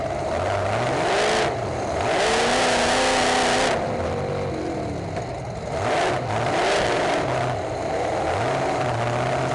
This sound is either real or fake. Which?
real